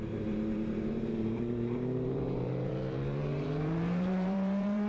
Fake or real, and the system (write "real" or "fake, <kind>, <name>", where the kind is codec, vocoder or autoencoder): fake, vocoder, BigVGAN v2